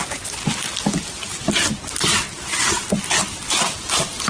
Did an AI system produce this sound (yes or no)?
no